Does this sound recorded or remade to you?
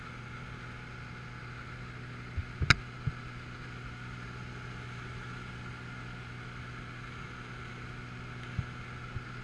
recorded